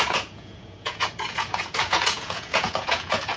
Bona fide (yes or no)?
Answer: no